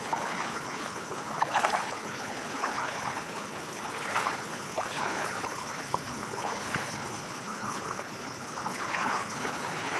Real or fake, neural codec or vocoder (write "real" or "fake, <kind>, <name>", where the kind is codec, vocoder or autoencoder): fake, codec, HILCodec